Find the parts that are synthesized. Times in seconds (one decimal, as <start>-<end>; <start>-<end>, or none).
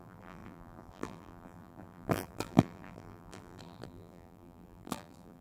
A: 0.0-5.4